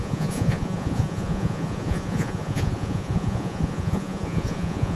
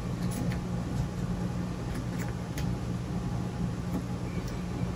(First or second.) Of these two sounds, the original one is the second